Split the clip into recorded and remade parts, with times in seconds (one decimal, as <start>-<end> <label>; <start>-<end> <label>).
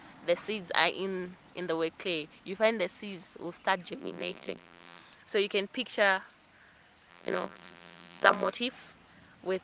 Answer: 0.0-4.0 recorded; 4.0-5.0 remade; 5.0-7.1 recorded; 7.1-8.5 remade; 8.5-9.6 recorded